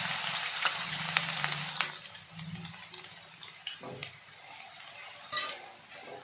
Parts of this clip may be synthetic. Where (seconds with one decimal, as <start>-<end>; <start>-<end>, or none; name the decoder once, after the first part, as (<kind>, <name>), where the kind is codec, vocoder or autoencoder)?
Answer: 0.5-1.0 (vocoder, HiFi-GAN)